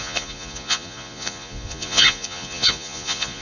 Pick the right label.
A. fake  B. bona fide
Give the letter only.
A